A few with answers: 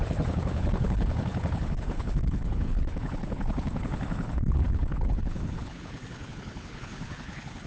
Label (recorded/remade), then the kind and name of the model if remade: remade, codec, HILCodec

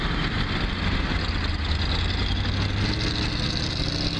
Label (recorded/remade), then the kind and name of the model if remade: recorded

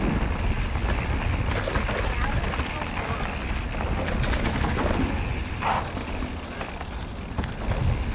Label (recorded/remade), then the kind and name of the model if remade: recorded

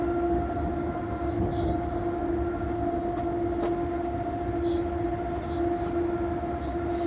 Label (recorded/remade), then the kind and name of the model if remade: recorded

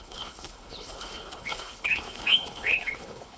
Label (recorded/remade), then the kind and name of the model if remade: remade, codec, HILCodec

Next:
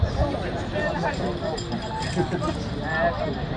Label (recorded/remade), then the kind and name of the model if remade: recorded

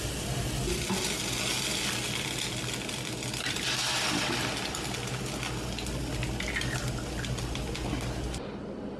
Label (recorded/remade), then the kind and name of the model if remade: recorded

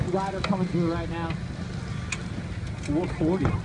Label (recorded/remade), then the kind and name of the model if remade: recorded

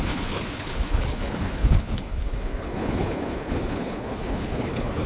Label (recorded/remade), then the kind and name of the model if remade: remade, codec, HILCodec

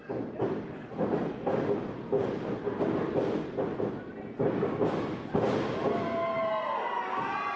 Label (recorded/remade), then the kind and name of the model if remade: recorded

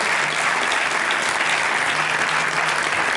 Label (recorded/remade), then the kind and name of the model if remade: recorded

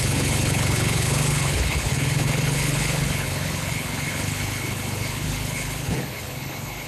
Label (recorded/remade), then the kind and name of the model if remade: remade, codec, HILCodec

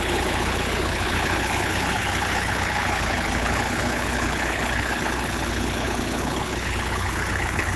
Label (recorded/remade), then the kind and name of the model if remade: remade, codec, HILCodec